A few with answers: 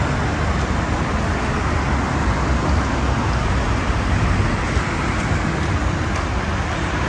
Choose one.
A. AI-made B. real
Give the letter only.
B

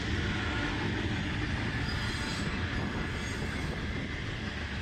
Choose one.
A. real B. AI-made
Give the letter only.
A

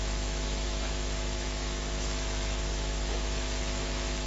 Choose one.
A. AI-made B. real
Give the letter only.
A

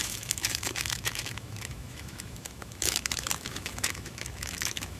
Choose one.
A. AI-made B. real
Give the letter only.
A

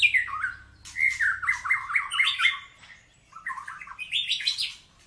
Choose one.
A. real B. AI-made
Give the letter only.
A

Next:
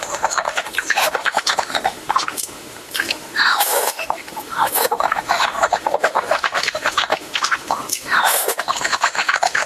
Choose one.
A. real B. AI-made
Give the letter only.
B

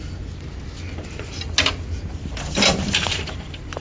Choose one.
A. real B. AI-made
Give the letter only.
A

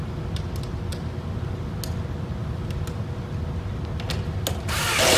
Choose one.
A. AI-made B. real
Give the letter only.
B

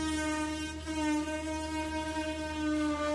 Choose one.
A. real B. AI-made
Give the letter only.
A